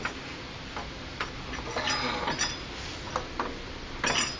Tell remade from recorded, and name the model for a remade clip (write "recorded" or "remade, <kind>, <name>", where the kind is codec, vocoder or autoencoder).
recorded